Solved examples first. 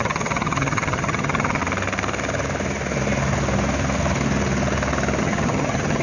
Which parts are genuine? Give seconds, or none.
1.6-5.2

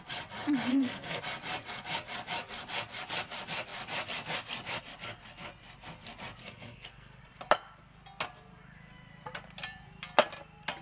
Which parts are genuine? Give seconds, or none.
0.0-0.7; 1.2-6.4; 7.2-10.8

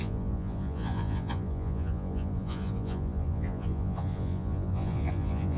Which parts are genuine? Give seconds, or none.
none

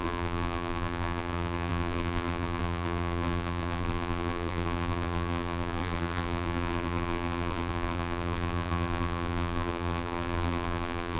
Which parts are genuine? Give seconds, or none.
none